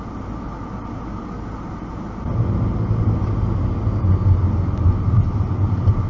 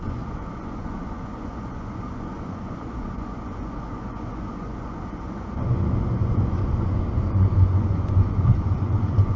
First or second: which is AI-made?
second